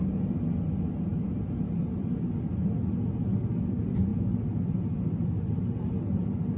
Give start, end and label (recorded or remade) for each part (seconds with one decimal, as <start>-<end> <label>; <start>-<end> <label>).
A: 0.0-1.1 recorded; 1.1-2.6 remade; 2.6-4.1 recorded; 4.1-5.7 remade; 5.7-6.6 recorded